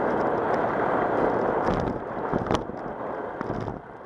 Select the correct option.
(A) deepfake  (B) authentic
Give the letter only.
B